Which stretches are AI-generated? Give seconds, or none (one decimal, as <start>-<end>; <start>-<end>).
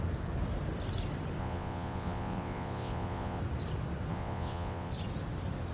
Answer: 1.4-3.4; 4.1-4.9